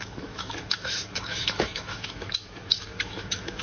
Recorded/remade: remade